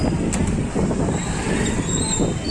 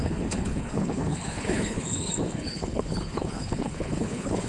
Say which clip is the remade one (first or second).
second